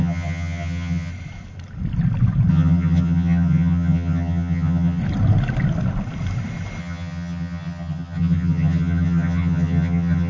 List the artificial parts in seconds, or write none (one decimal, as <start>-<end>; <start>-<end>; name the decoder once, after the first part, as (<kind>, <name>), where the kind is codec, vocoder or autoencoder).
0.0-1.1 (vocoder, HiFi-GAN); 2.5-5.0; 6.8-10.3